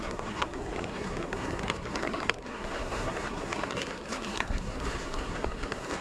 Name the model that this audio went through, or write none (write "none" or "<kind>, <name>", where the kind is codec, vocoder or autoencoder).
codec, SNAC